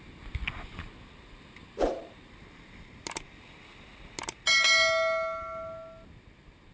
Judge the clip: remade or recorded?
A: recorded